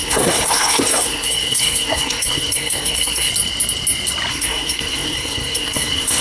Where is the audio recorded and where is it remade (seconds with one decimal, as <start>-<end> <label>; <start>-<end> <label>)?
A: 0.0-3.3 remade; 3.3-4.3 recorded; 4.3-6.2 remade